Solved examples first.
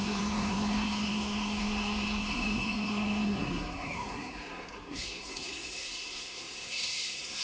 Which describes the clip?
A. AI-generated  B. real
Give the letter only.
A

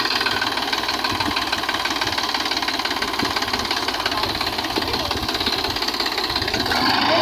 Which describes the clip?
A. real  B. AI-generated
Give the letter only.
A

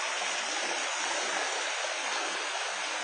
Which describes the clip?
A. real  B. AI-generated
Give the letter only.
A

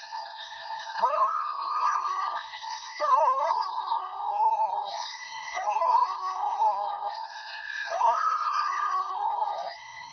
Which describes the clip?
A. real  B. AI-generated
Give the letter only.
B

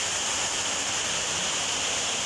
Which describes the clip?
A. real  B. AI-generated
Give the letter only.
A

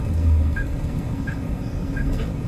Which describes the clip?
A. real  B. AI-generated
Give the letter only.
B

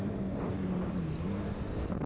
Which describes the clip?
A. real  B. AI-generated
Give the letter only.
A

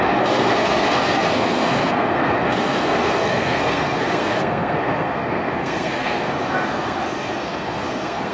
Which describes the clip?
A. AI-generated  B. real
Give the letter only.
A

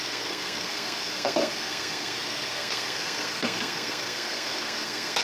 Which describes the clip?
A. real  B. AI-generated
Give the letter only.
B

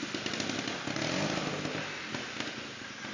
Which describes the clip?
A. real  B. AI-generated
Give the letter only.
A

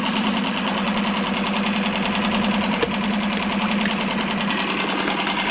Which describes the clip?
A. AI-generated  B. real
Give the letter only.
B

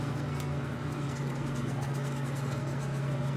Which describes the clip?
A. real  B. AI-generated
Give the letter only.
B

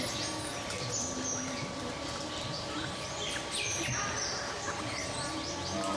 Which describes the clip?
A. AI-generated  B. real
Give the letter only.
B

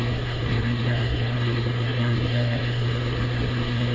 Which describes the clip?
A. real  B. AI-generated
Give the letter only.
B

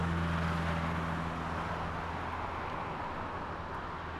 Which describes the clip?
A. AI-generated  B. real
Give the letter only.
B